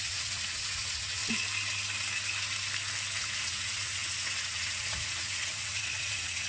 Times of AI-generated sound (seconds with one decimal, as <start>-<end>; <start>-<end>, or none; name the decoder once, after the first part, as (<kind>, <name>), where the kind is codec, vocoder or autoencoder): 0.0-1.2 (vocoder, Vocos); 3.2-6.5

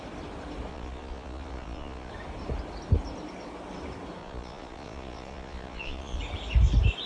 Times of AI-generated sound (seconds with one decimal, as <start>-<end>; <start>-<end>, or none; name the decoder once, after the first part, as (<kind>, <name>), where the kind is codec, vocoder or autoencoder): 0.7-2.1 (vocoder, Vocos); 4.2-6.2

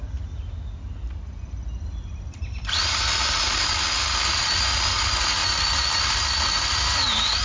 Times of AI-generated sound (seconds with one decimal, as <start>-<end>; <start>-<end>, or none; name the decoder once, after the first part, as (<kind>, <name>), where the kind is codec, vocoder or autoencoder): none

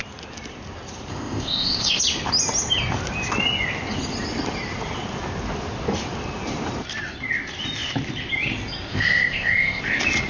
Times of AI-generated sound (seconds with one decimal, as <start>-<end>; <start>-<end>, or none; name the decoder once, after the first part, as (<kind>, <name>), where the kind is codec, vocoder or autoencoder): 1.1-2.0 (codec, ZipCodec); 8.9-9.8

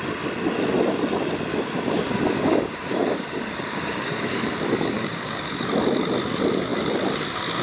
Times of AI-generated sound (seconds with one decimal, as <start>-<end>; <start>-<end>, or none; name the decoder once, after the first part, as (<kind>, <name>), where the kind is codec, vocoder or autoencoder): 1.5-5.5 (codec, DAC)